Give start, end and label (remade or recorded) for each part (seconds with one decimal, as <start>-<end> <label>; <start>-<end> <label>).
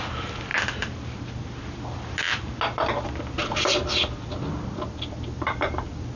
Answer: 0.0-6.2 recorded